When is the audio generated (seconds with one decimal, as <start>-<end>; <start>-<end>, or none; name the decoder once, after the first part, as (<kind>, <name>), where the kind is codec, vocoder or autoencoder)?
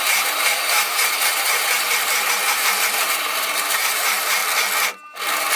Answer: 0.0-4.4 (vocoder, BigVGAN v2)